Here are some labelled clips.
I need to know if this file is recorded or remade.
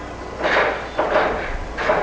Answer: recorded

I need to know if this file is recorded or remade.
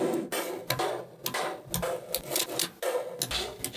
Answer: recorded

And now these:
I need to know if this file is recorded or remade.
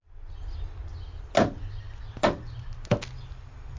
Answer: recorded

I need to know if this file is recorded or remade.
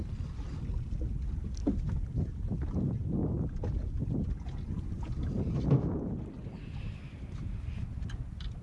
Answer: recorded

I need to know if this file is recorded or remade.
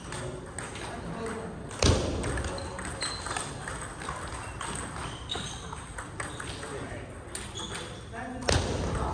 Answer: recorded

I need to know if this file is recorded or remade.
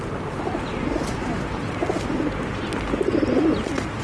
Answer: recorded